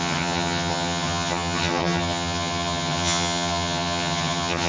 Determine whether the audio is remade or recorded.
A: remade